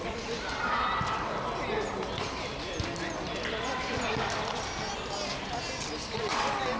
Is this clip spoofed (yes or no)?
no